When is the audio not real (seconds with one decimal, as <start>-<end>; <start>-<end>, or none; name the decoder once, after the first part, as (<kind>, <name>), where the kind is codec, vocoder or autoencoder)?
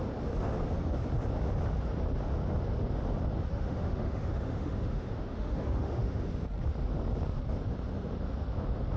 3.5-6.2 (autoencoder, DAC-VAE)